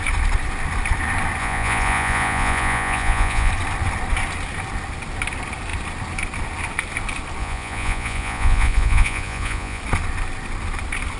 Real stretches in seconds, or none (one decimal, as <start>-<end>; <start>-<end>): 0.0-1.4; 3.5-7.4; 9.8-11.2